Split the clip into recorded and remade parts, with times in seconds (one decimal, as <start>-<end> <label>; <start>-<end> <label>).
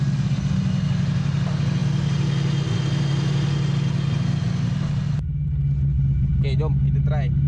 0.0-7.5 recorded